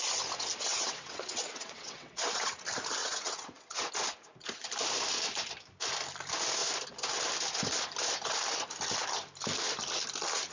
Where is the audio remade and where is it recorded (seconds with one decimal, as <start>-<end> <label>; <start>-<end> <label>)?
0.0-0.7 recorded; 0.7-2.6 remade; 2.6-3.0 recorded; 3.0-3.9 remade; 3.9-10.5 recorded